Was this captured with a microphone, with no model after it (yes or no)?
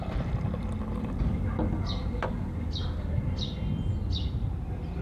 yes